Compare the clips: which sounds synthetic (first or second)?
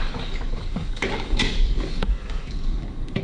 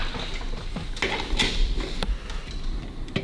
first